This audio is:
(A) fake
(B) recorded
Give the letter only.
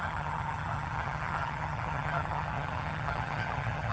A